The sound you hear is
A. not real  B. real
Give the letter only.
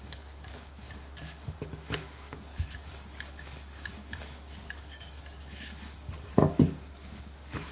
A